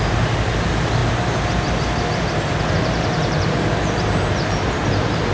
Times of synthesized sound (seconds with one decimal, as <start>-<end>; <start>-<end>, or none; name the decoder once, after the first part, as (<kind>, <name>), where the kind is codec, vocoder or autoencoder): 0.0-1.0 (vocoder, BigVGAN v2); 2.7-5.3